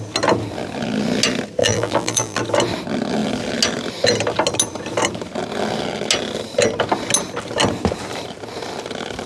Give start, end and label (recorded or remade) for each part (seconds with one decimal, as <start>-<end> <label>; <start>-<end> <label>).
0.0-1.6 recorded; 1.6-2.4 remade; 2.4-9.3 recorded